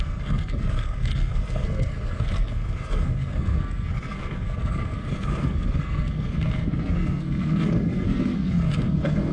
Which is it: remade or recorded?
remade